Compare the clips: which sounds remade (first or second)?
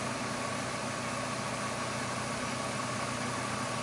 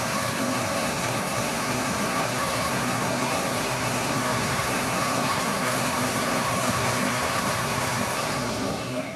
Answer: second